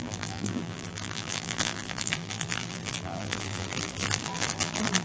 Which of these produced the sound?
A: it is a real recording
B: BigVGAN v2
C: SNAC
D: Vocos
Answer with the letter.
B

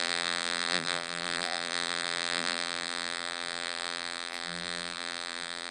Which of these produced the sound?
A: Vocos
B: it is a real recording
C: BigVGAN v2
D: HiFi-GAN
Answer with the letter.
C